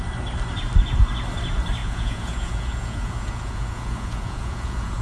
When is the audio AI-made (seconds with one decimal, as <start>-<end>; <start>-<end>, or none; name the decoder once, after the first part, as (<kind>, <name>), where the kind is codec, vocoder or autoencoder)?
1.8-5.0 (vocoder, Vocos)